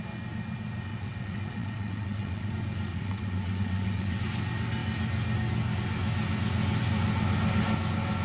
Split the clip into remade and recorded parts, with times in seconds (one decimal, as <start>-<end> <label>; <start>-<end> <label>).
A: 0.0-0.9 recorded; 0.9-2.5 remade; 2.5-2.9 recorded; 2.9-4.2 remade; 4.2-8.2 recorded